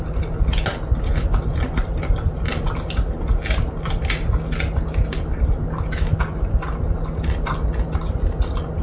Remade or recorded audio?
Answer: recorded